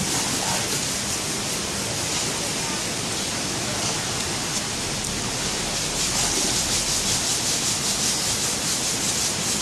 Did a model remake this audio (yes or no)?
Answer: no